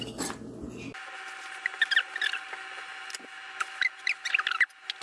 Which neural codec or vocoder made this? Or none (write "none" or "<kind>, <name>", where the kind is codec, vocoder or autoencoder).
none